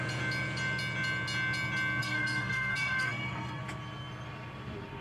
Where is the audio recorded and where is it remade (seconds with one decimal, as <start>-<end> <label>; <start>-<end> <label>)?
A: 0.0-2.0 recorded; 2.0-3.6 remade; 3.6-5.0 recorded